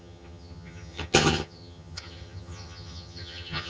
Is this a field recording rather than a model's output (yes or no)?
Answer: no